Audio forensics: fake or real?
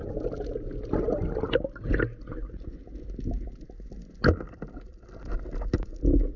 real